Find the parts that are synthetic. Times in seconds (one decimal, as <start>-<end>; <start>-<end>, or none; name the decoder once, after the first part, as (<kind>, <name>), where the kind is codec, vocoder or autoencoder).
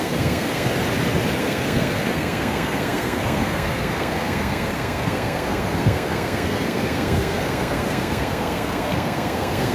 0.0-0.7 (codec, SNAC); 1.4-9.7